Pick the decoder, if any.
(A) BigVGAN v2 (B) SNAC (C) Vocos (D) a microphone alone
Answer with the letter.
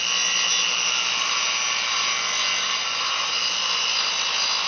D